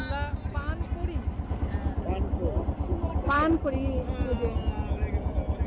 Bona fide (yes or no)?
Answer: yes